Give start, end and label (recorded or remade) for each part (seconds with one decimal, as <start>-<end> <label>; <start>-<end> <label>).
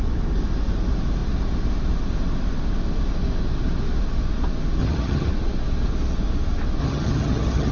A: 0.0-4.8 recorded; 4.8-5.3 remade; 5.3-6.8 recorded; 6.8-7.7 remade